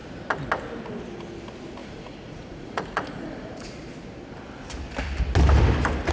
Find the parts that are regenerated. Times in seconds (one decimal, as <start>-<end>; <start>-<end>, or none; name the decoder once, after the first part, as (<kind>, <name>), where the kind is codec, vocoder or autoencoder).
1.8-3.7 (vocoder, Vocos)